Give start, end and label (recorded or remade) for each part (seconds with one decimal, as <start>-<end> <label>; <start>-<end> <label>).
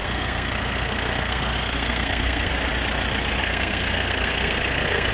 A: 0.0-2.5 remade; 2.5-3.4 recorded; 3.4-5.1 remade